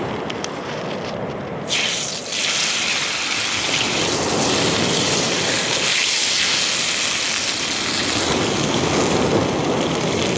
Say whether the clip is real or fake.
real